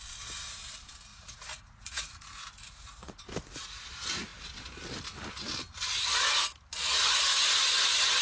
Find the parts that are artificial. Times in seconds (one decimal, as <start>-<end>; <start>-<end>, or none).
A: 1.1-3.2